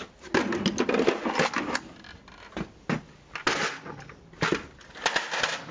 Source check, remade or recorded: recorded